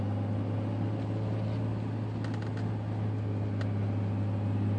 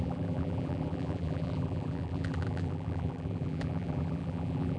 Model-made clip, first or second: second